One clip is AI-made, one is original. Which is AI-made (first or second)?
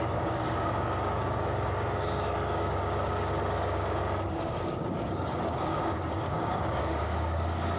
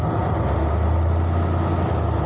first